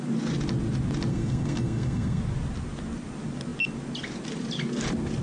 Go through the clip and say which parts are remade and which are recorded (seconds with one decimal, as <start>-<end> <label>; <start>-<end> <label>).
0.0-1.1 recorded; 1.1-2.2 remade; 2.2-5.2 recorded